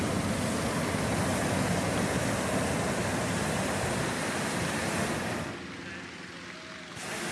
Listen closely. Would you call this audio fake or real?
real